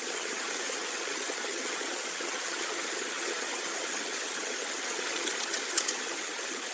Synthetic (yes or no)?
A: yes